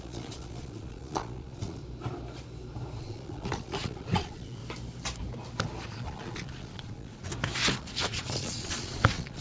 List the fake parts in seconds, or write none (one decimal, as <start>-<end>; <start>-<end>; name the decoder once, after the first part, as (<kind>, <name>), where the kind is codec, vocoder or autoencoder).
0.0-1.8 (vocoder, Vocos); 3.0-4.6; 5.9-7.3; 7.8-9.4